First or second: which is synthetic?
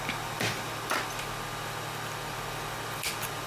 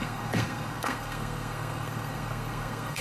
second